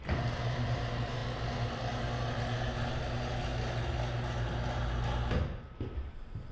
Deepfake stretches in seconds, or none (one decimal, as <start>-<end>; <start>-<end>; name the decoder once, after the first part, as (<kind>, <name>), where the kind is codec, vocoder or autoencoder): 0.0-1.2 (vocoder, BigVGAN v2); 2.9-3.5; 6.0-6.5

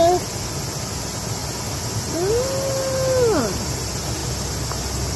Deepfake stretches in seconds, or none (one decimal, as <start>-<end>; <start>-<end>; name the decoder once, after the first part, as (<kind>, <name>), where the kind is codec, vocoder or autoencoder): none

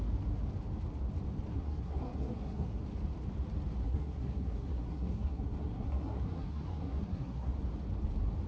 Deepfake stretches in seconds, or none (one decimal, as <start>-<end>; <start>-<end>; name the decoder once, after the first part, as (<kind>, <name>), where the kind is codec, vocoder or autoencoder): 1.5-2.8 (codec, SNAC); 3.8-7.5

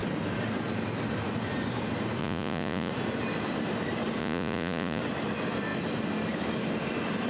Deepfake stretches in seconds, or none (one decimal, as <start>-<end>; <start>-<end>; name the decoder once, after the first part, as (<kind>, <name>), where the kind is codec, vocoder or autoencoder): 2.2-2.9 (vocoder, Vocos); 4.2-5.0

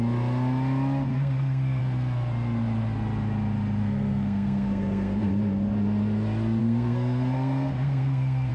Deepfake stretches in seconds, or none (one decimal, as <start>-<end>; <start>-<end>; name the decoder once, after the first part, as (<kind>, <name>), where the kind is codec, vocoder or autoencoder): 1.1-1.8 (codec, SNAC); 3.8-5.3; 6.6-8.5

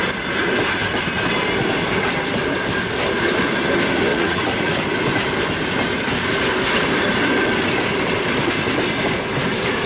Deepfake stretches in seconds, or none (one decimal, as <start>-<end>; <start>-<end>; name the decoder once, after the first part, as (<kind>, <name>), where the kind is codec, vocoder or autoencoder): 4.1-4.8 (vocoder, Vocos)